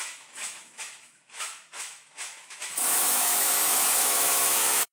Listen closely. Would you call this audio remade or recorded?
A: remade